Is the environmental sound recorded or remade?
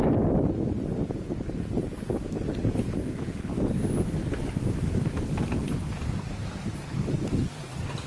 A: recorded